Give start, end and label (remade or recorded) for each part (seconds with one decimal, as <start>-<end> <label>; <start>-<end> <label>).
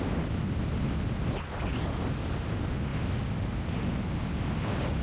0.0-5.0 recorded